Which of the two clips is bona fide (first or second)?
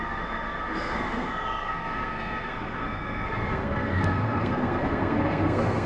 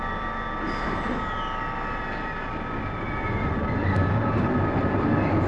second